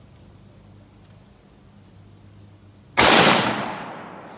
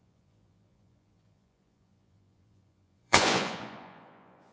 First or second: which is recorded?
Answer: first